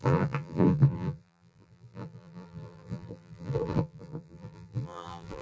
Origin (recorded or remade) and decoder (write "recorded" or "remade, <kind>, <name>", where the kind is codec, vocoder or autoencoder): remade, vocoder, BigVGAN v2